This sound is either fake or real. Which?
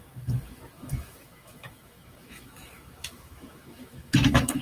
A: fake